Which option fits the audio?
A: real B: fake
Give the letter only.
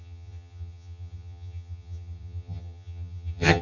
B